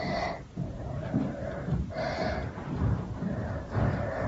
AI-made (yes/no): yes